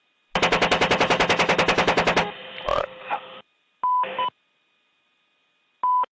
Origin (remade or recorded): recorded